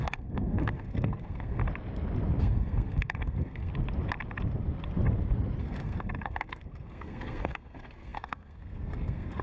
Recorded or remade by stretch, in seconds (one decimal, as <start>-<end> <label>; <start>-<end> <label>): 0.0-1.6 remade; 1.6-2.4 recorded; 2.4-3.7 remade; 3.7-5.6 recorded; 5.6-9.4 remade